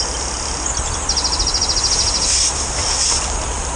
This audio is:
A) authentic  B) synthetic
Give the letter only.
A